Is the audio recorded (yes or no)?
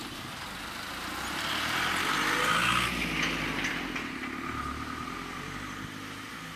yes